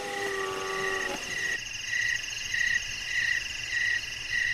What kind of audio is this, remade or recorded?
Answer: recorded